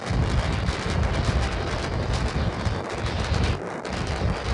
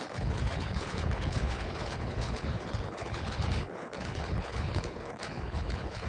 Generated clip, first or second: second